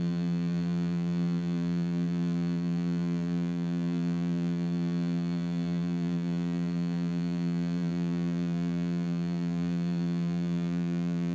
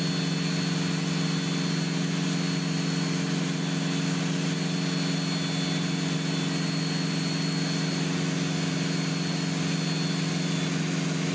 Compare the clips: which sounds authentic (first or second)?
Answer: second